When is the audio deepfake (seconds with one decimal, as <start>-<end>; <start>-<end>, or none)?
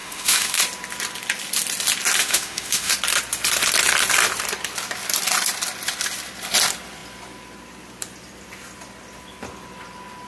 0.0-0.6; 2.2-2.9